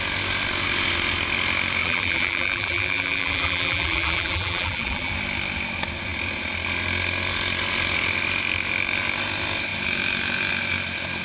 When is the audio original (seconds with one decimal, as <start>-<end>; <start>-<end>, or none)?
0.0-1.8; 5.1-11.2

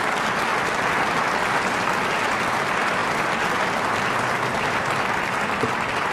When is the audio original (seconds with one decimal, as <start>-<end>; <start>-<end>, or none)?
0.0-6.1

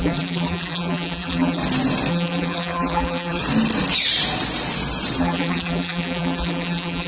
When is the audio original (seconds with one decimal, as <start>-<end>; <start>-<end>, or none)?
1.6-2.1; 3.4-5.2

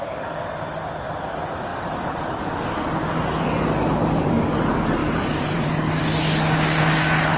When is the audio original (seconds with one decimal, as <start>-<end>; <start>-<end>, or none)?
0.0-1.7; 2.3-5.0; 6.0-7.4

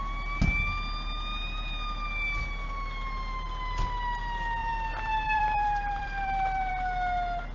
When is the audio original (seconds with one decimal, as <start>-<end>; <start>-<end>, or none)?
0.0-4.6; 6.7-7.5

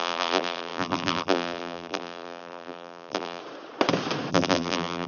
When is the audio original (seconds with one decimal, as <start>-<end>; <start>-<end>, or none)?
3.4-4.3